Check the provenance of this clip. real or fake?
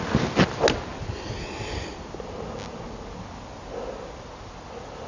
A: real